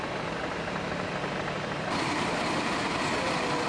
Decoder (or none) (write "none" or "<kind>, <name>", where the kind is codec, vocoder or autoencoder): vocoder, BigVGAN v2